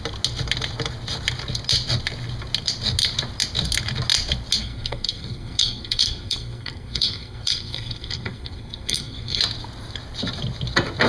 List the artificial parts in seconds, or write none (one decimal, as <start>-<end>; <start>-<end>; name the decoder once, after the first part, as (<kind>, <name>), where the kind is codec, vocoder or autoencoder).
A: 4.6-9.4 (codec, SNAC)